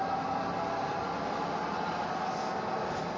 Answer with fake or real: real